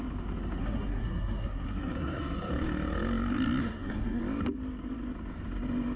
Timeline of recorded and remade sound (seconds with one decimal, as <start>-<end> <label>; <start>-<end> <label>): 0.0-0.6 recorded; 0.6-2.5 remade; 2.5-3.6 recorded; 3.6-4.2 remade; 4.2-6.0 recorded